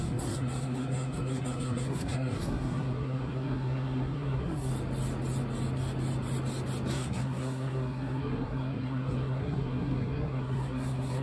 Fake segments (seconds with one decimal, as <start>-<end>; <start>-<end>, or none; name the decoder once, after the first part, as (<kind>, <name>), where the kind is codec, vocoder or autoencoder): 0.0-4.7 (codec, SNAC); 6.9-11.2